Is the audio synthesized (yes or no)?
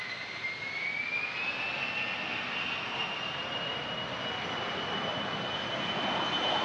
no